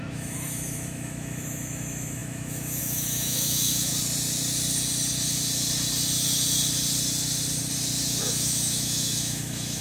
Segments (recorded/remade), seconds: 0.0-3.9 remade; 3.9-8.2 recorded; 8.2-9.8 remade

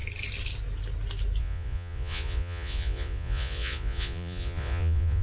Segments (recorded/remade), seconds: 0.0-1.4 recorded; 1.4-5.2 remade